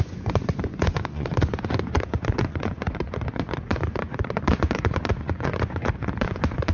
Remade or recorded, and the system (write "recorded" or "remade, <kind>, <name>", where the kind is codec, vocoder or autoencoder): remade, vocoder, Vocos